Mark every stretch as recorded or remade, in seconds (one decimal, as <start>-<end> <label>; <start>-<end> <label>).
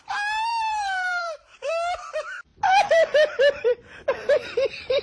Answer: 0.0-0.5 recorded; 0.5-1.7 remade; 1.7-2.5 recorded; 2.5-5.0 remade